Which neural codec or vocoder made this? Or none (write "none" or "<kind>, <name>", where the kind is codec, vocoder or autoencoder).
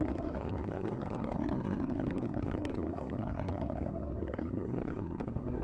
codec, SNAC